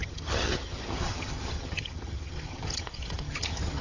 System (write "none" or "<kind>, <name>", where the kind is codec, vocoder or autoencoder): vocoder, HiFi-GAN